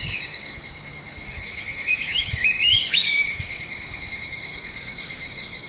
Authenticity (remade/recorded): remade